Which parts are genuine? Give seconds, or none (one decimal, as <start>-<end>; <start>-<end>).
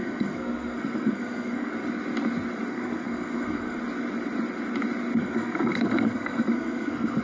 1.7-2.7; 3.8-5.2